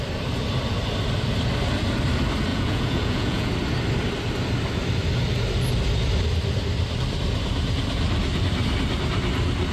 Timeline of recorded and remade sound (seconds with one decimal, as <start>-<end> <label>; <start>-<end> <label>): 0.0-2.5 recorded; 2.5-3.5 remade; 3.5-9.7 recorded